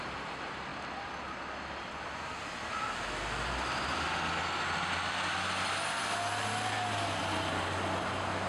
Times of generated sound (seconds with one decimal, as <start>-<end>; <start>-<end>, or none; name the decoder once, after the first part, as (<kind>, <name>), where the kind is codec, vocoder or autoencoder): none